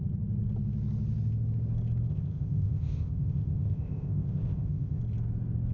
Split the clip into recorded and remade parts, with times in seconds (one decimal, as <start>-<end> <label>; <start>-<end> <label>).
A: 0.0-2.1 recorded; 2.1-5.0 remade; 5.0-5.7 recorded